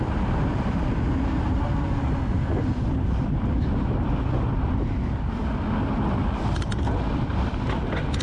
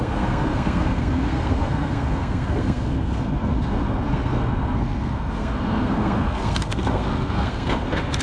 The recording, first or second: first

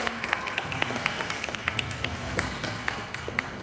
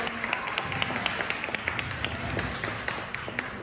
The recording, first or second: second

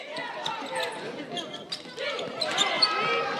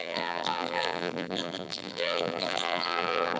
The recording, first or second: first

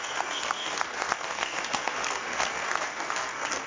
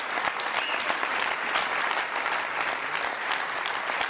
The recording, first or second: second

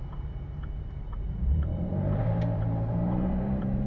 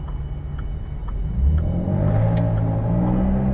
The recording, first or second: second